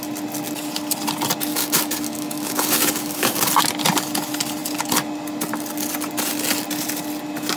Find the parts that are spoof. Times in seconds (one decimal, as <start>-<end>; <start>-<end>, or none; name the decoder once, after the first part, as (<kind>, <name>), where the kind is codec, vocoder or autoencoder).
1.5-3.5 (codec, DAC)

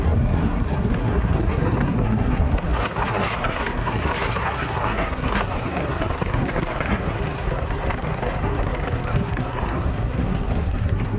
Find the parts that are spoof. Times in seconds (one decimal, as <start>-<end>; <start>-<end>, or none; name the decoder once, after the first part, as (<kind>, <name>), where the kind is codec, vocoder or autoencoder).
0.0-11.2 (codec, SNAC)

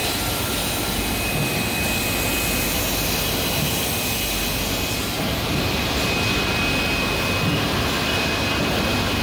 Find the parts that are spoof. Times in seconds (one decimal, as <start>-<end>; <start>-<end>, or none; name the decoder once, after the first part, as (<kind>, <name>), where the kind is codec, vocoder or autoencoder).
none

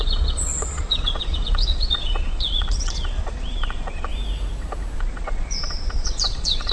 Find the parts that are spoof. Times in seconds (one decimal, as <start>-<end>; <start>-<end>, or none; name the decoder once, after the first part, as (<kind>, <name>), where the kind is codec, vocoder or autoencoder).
0.0-4.1 (vocoder, Vocos); 5.0-6.7

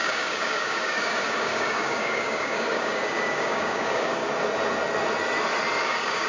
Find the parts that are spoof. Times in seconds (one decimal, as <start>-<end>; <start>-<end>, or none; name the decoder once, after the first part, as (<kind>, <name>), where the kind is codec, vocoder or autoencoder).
0.0-4.2 (codec, DAC); 5.8-6.3

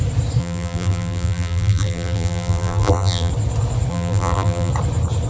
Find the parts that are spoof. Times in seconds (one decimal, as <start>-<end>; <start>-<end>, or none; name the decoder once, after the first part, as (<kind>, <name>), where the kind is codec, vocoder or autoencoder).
0.4-3.3 (vocoder, BigVGAN v2); 3.9-4.7

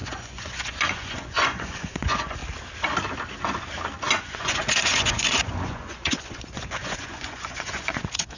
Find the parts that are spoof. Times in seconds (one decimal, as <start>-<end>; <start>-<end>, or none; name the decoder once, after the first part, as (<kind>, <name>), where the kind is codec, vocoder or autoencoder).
0.0-2.4 (vocoder, Vocos); 4.2-8.4